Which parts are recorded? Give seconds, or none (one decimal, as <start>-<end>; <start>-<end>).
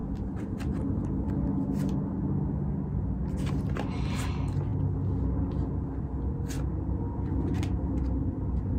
1.3-8.8